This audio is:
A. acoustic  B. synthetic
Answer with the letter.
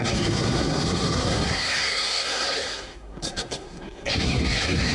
B